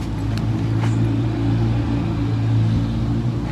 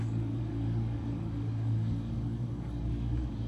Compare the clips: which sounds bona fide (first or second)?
first